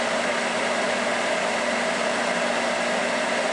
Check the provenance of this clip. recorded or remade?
recorded